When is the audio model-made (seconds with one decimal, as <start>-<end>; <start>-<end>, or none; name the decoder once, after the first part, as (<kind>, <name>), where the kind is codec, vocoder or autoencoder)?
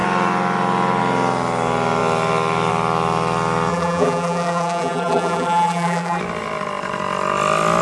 3.7-6.2 (vocoder, BigVGAN v2)